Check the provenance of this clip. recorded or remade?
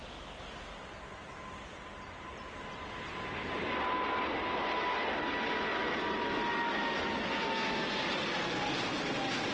recorded